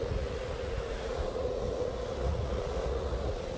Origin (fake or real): fake